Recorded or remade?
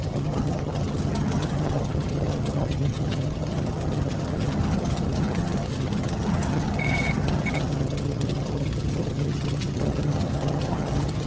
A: remade